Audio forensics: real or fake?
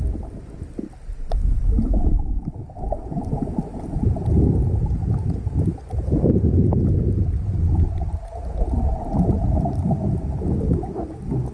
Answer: real